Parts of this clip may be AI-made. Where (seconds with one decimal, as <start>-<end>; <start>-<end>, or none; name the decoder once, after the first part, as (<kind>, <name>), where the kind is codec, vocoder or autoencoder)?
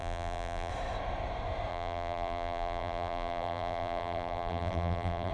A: 0.0-0.7 (vocoder, BigVGAN v2); 1.7-5.3